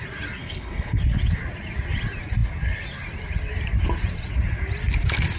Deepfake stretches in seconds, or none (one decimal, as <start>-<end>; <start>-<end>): 0.4-1.0